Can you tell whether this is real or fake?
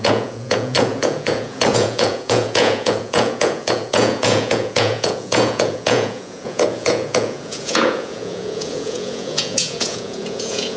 fake